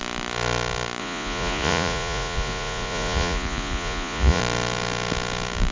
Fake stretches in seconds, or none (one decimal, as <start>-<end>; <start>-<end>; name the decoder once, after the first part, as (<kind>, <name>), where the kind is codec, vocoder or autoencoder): 1.0-4.4 (vocoder, Vocos)